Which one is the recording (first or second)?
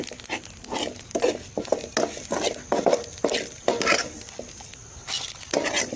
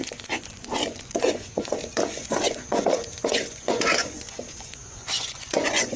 first